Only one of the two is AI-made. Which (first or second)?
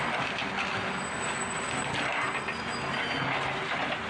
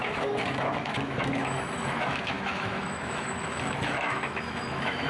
second